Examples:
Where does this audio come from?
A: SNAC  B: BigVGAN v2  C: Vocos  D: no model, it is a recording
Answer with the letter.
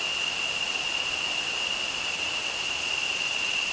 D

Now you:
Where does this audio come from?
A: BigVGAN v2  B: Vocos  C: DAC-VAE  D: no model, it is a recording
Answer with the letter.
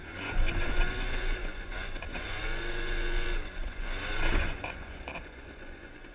B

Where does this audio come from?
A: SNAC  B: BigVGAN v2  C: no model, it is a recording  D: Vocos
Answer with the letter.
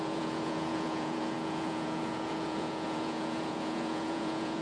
D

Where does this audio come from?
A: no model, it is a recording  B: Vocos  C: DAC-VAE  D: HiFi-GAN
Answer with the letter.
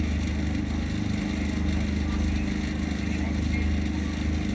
A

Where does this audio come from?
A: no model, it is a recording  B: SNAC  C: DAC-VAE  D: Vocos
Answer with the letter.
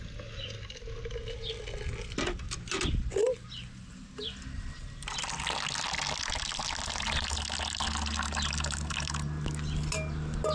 A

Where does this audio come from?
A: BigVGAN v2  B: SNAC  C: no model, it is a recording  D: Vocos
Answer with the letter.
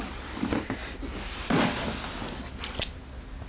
C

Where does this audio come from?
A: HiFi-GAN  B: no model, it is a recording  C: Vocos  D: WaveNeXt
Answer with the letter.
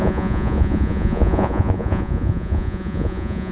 C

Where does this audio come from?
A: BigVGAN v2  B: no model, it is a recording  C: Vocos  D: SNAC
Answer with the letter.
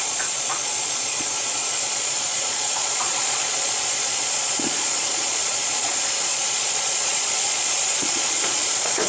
C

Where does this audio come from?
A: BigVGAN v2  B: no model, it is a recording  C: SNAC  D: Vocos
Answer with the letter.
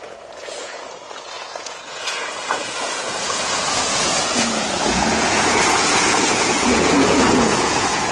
D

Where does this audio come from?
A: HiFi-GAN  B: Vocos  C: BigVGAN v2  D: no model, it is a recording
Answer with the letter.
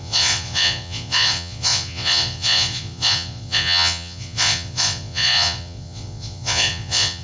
B